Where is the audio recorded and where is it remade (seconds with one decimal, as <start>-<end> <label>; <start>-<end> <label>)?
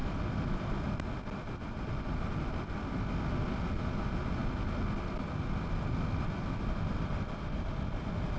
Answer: 0.0-8.4 recorded